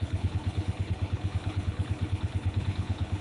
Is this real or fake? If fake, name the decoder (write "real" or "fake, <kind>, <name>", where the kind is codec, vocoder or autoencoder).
fake, codec, HILCodec